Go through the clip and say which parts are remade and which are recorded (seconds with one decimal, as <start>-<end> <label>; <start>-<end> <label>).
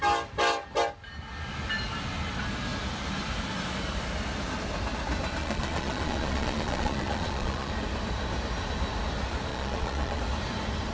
0.0-5.4 recorded; 5.4-7.7 remade; 7.7-9.5 recorded; 9.5-10.2 remade; 10.2-10.9 recorded